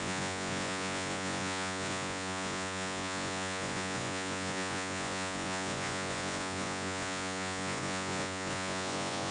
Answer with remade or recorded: remade